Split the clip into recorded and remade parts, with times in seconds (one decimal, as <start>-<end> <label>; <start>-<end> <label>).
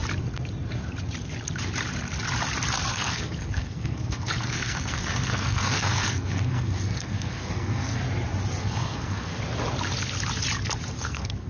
0.0-2.9 recorded; 2.9-8.0 remade; 8.0-8.6 recorded; 8.6-9.3 remade; 9.3-10.9 recorded; 10.9-11.5 remade